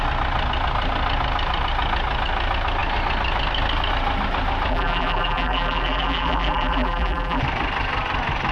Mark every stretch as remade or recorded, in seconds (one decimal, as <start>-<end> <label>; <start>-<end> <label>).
0.0-4.7 recorded; 4.7-7.4 remade; 7.4-8.5 recorded